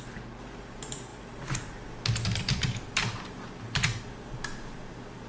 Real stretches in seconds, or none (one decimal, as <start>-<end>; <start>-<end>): 0.0-5.3